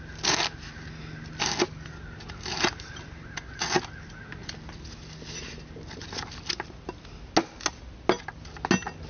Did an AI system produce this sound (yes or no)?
no